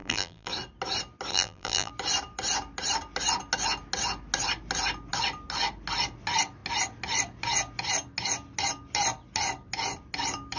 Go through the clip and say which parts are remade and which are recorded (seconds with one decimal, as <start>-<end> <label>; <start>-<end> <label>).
0.0-0.5 remade; 0.5-1.3 recorded; 1.3-1.9 remade; 1.9-10.6 recorded